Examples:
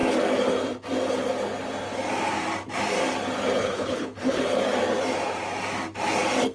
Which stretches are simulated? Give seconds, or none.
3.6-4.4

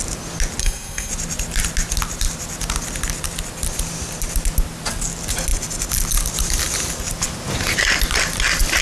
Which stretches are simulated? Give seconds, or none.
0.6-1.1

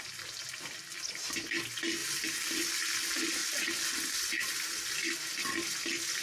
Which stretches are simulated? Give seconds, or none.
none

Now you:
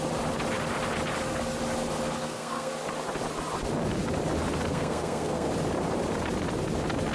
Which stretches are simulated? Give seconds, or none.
2.2-2.7; 4.7-5.5